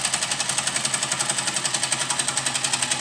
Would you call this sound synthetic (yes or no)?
no